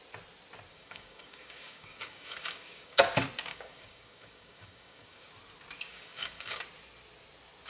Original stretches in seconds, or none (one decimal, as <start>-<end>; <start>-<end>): 0.0-0.7; 3.0-3.5; 5.3-5.9; 6.6-7.7